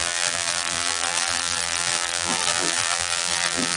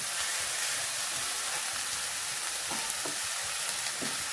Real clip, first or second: second